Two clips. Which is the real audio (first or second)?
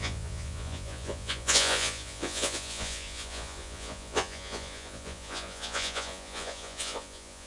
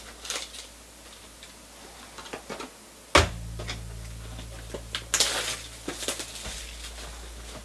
second